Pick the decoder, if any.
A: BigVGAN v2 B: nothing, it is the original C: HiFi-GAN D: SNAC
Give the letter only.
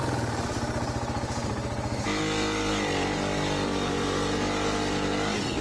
B